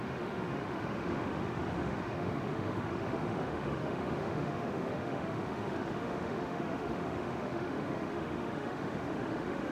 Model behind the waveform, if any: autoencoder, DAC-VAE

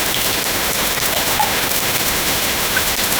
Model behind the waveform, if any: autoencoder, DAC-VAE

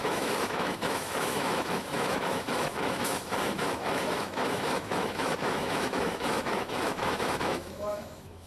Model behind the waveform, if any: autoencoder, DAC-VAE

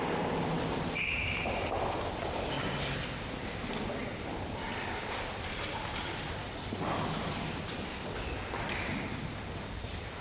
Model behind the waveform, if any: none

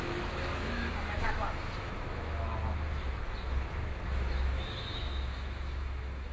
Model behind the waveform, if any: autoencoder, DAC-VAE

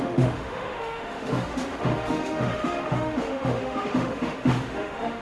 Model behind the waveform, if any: autoencoder, DAC-VAE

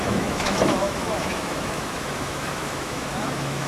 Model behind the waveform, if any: autoencoder, DAC-VAE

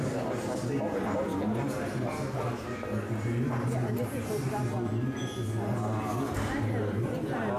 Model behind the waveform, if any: none